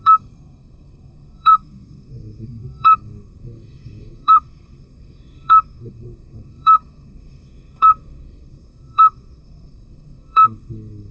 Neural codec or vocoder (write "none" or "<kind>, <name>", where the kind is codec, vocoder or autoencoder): codec, SNAC